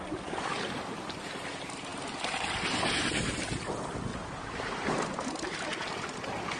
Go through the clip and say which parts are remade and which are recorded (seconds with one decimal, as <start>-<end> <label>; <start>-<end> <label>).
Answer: 0.0-4.1 recorded; 4.1-5.3 remade; 5.3-6.6 recorded